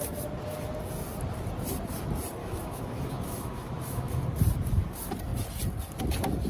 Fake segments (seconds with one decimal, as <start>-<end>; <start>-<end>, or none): 2.4-4.2